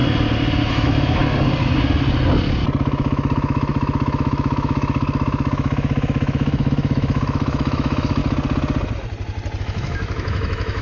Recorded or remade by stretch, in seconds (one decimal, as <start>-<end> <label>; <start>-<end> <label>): 0.0-0.7 recorded; 0.7-1.2 remade; 1.2-2.8 recorded; 2.8-8.2 remade; 8.2-9.6 recorded; 9.6-10.8 remade